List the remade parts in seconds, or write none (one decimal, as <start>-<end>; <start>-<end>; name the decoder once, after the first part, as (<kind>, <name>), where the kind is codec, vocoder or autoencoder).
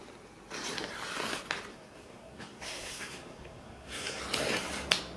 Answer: 1.7-4.2 (codec, SNAC)